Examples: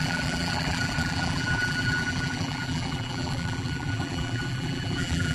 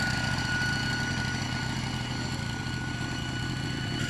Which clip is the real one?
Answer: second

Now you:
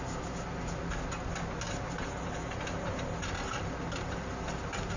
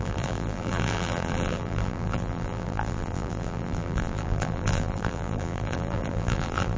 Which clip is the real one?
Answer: first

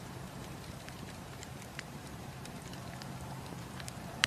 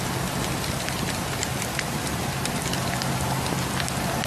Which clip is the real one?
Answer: second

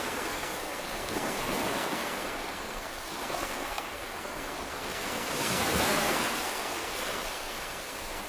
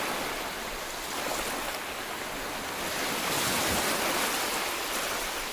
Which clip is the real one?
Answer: second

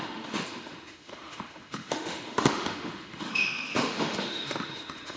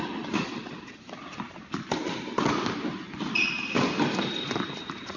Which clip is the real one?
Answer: second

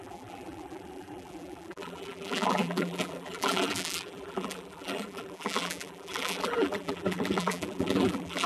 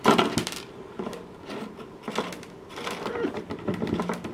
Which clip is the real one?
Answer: second